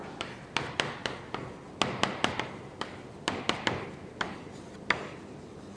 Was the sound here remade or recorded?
recorded